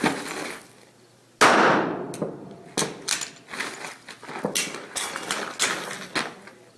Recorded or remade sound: recorded